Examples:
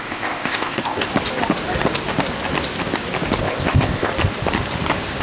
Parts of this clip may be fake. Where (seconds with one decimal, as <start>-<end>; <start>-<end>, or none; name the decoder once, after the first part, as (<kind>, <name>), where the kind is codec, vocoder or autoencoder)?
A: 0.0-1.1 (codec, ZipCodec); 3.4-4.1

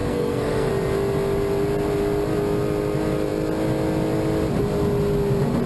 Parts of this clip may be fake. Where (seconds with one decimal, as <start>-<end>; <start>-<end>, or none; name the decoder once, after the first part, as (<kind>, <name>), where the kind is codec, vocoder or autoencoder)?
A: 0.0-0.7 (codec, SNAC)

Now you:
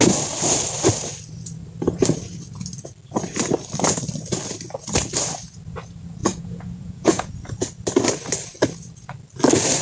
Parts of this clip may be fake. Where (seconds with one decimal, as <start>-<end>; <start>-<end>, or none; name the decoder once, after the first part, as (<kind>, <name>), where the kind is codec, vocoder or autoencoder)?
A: 6.2-7.3 (vocoder, Vocos)

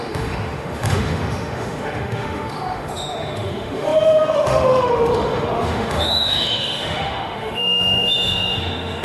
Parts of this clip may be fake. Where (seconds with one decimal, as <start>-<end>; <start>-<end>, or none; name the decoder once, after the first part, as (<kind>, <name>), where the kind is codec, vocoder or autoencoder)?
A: 0.0-9.0 (autoencoder, DAC-VAE)

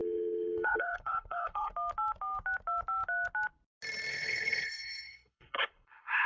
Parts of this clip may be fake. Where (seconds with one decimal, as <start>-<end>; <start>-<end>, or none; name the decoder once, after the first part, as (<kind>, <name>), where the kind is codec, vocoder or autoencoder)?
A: 0.0-1.7 (codec, HILCodec); 4.1-6.3